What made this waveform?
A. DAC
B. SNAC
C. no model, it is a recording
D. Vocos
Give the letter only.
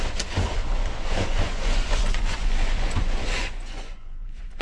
D